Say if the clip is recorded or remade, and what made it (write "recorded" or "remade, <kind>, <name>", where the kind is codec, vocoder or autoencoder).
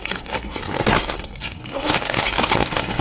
remade, codec, SNAC